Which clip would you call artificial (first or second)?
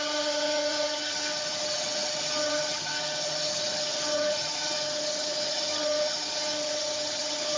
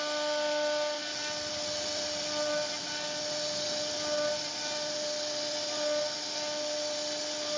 first